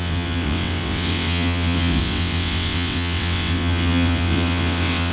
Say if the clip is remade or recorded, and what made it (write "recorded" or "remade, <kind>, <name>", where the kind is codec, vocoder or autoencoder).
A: remade, vocoder, WaveNeXt